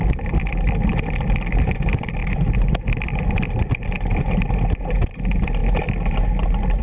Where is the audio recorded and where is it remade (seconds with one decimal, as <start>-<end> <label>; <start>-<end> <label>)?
0.0-6.8 recorded